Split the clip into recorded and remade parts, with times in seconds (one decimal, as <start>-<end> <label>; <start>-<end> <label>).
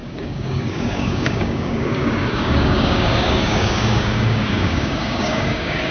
0.0-5.9 remade